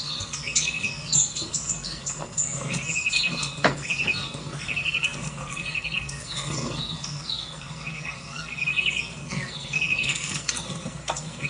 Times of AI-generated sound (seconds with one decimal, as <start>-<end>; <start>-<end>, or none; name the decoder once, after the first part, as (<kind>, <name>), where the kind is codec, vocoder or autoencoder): 0.0-11.5 (codec, SNAC)